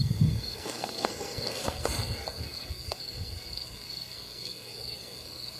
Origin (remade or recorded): remade